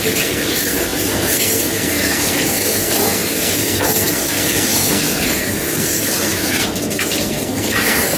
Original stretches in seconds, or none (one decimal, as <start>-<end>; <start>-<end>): none

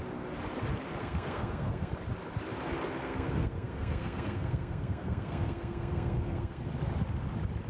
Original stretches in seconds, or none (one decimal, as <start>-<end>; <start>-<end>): 0.0-1.0; 1.9-3.0; 6.6-7.7

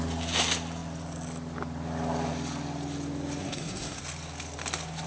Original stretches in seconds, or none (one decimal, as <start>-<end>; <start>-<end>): 0.0-3.4; 4.0-5.1

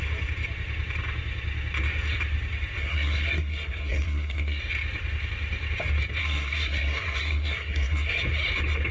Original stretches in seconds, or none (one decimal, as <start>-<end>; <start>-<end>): 0.0-2.8; 4.6-6.2; 8.2-8.9

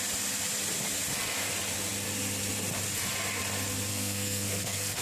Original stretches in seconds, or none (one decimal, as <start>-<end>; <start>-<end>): 0.0-3.9

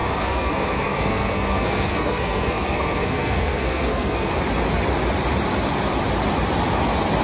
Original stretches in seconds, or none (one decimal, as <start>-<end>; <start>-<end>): 4.3-7.2